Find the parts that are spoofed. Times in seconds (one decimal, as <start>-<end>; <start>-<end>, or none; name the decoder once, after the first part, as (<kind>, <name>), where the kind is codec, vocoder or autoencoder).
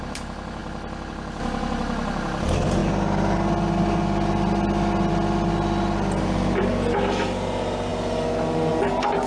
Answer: none